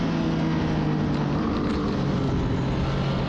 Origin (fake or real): real